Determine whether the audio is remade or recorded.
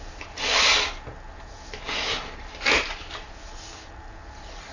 recorded